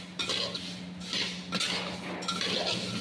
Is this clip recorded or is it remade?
recorded